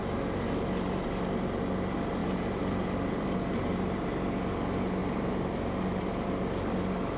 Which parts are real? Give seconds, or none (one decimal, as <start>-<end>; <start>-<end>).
0.0-2.2; 4.1-5.0; 6.3-7.2